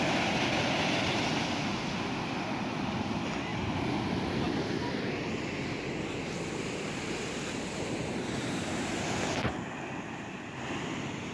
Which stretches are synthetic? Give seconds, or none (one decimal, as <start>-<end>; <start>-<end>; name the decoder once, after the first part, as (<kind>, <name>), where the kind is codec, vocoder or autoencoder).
none